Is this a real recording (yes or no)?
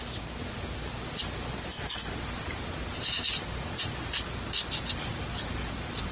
yes